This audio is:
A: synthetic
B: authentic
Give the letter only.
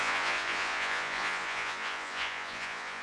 A